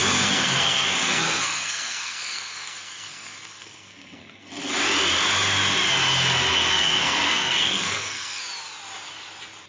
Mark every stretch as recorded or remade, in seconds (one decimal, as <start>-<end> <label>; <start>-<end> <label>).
0.0-4.5 remade; 4.5-6.5 recorded; 6.5-8.4 remade; 8.4-9.7 recorded